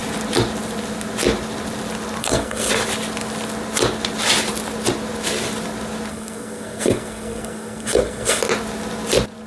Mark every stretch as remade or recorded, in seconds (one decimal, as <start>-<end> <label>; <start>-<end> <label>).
0.0-2.2 recorded; 2.2-2.7 remade; 2.7-6.1 recorded; 6.1-8.4 remade; 8.4-9.5 recorded